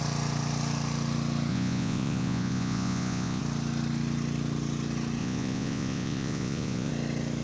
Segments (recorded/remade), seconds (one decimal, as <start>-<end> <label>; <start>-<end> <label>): 0.0-1.5 recorded; 1.5-3.4 remade; 3.4-5.2 recorded; 5.2-6.9 remade; 6.9-7.4 recorded